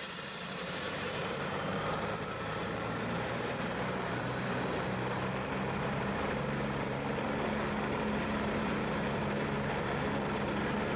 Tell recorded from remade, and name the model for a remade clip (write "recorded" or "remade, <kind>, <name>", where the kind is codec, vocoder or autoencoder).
remade, vocoder, BigVGAN v2